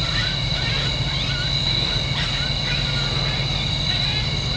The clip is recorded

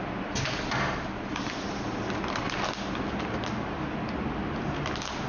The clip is recorded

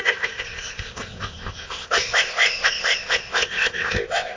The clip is remade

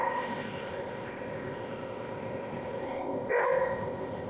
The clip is remade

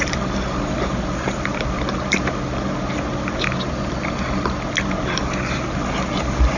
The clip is recorded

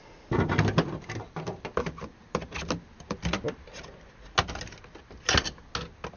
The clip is recorded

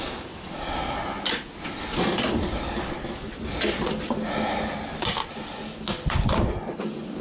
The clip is recorded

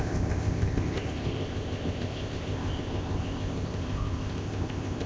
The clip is remade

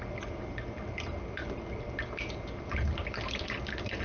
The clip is recorded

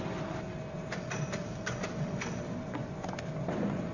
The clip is recorded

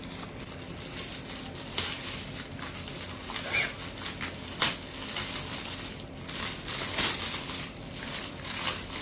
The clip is recorded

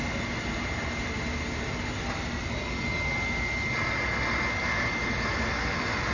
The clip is recorded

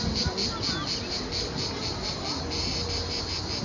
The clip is recorded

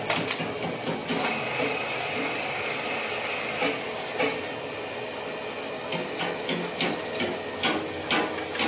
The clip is recorded